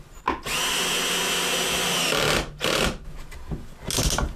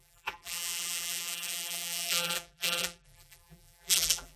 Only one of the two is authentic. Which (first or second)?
first